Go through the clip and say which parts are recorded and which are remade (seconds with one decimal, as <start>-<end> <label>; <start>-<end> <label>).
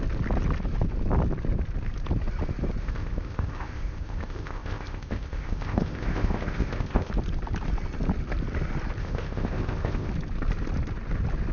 0.0-2.8 recorded; 2.8-7.1 remade; 7.1-9.0 recorded; 9.0-10.1 remade; 10.1-11.5 recorded